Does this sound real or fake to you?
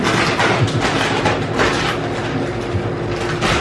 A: real